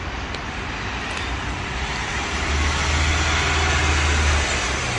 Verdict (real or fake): real